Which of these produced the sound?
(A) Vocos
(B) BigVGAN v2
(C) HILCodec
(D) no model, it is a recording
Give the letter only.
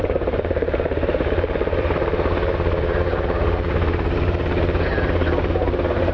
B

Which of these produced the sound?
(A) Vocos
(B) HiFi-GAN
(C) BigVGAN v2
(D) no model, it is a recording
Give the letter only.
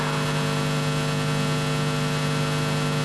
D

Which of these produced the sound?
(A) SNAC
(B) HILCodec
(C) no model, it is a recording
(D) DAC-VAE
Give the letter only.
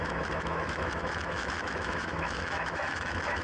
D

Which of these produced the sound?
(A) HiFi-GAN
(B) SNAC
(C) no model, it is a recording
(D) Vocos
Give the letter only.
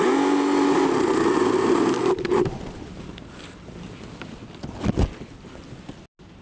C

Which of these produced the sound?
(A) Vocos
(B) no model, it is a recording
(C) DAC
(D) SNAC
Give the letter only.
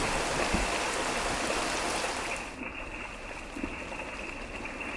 B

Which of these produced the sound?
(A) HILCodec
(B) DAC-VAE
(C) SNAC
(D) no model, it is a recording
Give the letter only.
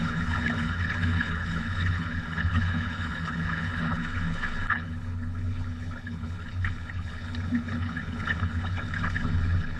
A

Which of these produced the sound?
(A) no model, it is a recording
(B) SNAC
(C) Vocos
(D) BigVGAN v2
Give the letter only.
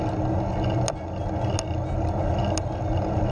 A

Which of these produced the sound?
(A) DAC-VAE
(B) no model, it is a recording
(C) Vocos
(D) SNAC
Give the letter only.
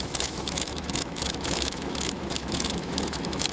A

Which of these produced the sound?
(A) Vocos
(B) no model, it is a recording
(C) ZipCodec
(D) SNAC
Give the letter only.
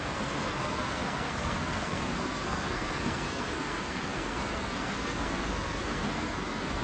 D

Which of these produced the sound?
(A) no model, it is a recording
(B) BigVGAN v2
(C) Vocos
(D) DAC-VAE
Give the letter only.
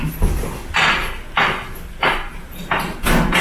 A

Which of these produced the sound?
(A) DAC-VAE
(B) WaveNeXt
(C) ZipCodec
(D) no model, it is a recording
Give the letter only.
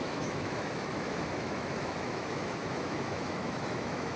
A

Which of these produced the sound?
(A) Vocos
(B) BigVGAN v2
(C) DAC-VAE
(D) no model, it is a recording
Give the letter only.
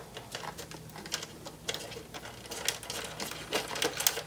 D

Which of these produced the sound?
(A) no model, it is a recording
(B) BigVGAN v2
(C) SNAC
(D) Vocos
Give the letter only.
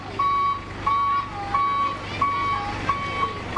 A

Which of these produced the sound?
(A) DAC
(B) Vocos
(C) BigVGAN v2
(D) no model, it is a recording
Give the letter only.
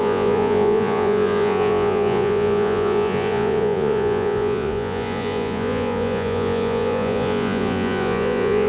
B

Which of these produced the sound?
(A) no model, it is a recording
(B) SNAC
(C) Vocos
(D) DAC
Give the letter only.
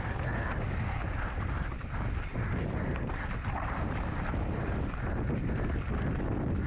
A